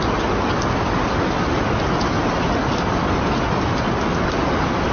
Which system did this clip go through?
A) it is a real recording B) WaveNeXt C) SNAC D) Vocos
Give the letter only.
A